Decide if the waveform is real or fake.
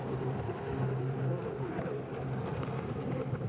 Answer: real